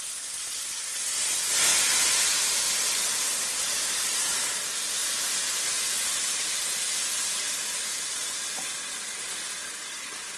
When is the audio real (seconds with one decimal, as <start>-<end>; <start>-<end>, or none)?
0.0-10.4